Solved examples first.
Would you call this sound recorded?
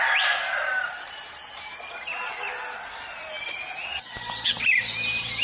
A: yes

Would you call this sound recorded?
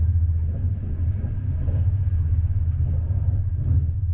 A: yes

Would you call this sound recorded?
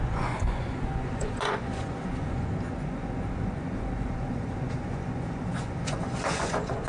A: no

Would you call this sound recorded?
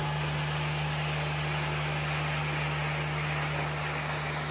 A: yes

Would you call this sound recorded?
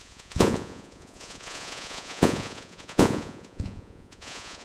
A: no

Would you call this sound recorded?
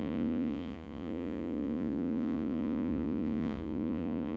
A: no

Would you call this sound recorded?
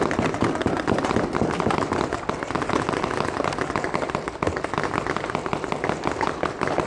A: yes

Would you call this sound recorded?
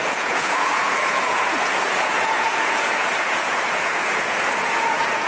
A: no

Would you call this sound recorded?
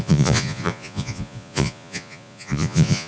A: no